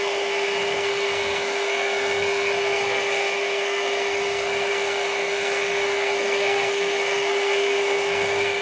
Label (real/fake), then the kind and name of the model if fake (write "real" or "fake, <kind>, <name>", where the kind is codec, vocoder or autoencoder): fake, codec, SNAC